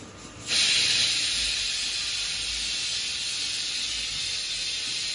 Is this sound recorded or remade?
recorded